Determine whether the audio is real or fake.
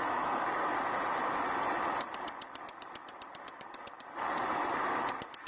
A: real